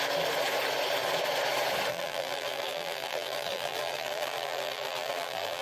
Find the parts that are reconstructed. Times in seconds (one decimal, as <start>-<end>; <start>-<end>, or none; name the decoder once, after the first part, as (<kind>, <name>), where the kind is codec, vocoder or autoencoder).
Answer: 1.9-5.6 (vocoder, BigVGAN v2)